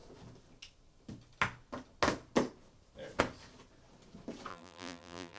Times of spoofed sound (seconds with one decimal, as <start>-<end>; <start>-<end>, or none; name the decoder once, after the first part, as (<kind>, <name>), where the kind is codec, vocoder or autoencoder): 4.5-5.4 (vocoder, BigVGAN v2)